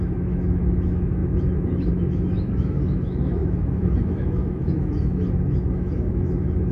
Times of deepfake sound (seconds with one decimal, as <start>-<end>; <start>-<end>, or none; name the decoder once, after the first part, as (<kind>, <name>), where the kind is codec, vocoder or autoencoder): 0.0-6.7 (autoencoder, DAC-VAE)